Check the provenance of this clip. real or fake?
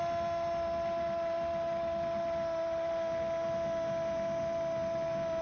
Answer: real